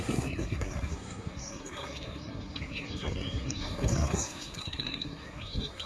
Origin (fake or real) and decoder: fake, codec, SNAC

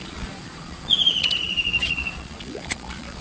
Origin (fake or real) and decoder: fake, vocoder, Vocos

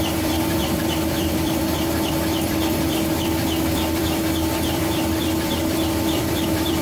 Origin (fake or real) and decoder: fake, vocoder, BigVGAN v2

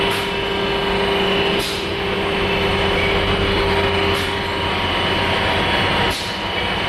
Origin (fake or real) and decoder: real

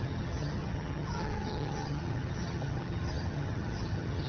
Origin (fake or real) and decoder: fake, vocoder, HiFi-GAN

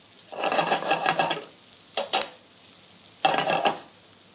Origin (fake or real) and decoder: real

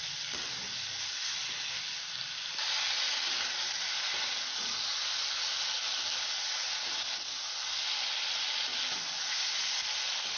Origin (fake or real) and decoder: real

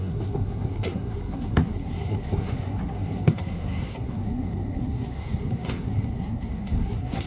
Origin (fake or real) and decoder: fake, codec, SNAC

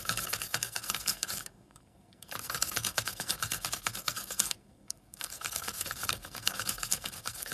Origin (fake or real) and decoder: fake, codec, SNAC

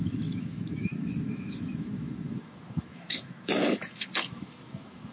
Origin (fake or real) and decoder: fake, autoencoder, DAC-VAE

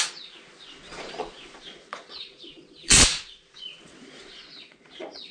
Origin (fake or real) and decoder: fake, vocoder, Vocos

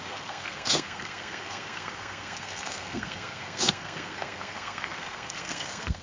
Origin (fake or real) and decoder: fake, codec, SNAC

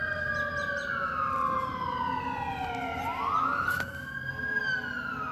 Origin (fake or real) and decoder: real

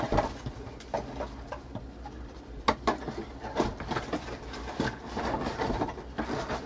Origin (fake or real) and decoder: real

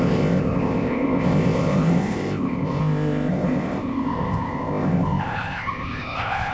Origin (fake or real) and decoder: fake, codec, ZipCodec